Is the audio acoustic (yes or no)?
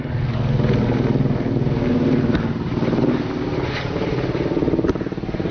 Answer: yes